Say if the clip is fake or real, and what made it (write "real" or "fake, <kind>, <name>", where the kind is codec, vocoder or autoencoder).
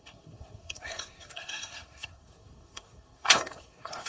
fake, codec, SNAC